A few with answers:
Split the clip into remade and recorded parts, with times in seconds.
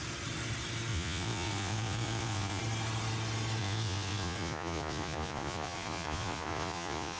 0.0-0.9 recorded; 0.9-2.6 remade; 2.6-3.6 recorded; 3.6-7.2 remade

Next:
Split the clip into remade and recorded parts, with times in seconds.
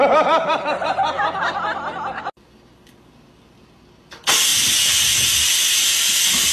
0.0-6.5 recorded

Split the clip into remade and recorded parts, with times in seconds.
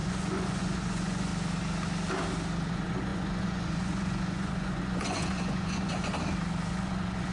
0.0-1.3 remade; 1.3-2.7 recorded; 2.7-6.1 remade; 6.1-6.7 recorded; 6.7-7.3 remade